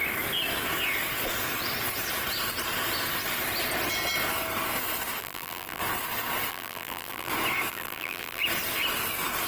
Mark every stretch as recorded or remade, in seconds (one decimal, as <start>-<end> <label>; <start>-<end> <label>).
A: 0.0-5.2 recorded; 5.2-5.8 remade; 5.8-6.5 recorded; 6.5-7.3 remade; 7.3-7.7 recorded; 7.7-8.4 remade; 8.4-9.5 recorded